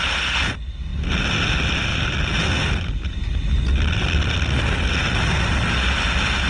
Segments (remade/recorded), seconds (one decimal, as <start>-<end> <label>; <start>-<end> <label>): 0.0-6.5 recorded